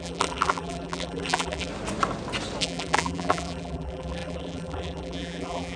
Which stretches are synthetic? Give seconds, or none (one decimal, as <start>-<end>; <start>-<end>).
0.0-1.7; 2.6-5.8